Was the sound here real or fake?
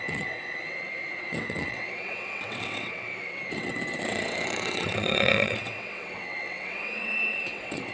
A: fake